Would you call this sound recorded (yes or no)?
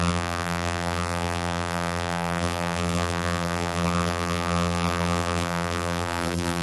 no